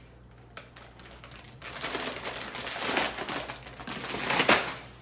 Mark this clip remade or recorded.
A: recorded